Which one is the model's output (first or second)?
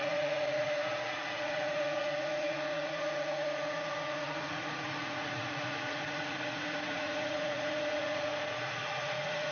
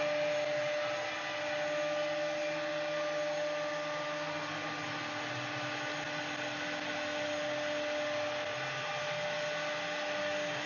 first